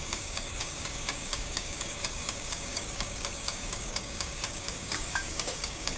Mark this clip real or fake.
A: fake